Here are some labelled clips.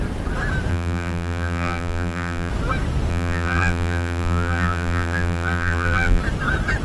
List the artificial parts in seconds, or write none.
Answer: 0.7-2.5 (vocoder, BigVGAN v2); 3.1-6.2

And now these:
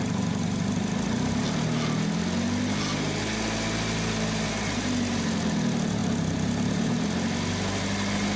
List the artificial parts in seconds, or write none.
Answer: 6.0-7.1 (vocoder, BigVGAN v2)

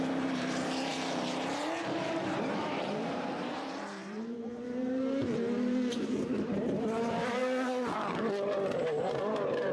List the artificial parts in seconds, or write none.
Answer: 0.0-7.4 (vocoder, BigVGAN v2); 9.0-9.7

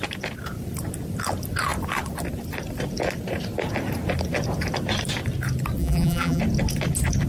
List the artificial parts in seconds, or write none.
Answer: 5.8-6.4 (vocoder, BigVGAN v2)